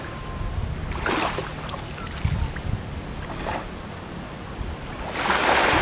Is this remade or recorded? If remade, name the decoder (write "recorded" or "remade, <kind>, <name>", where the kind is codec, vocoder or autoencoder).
recorded